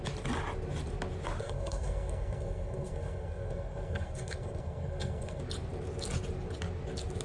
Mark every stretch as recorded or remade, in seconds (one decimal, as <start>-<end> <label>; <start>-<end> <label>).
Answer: 0.0-1.4 recorded; 1.4-5.4 remade; 5.4-7.2 recorded